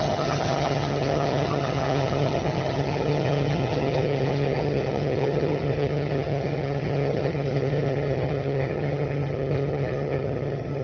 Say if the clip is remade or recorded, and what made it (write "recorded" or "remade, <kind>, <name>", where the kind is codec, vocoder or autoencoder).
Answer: remade, vocoder, HiFi-GAN